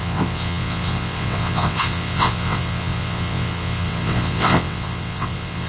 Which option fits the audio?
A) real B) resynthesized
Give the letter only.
B